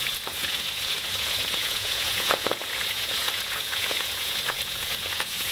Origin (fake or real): fake